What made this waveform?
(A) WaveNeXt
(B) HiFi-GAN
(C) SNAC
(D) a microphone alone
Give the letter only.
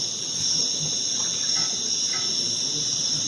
D